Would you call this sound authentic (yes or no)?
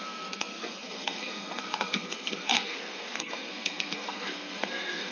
no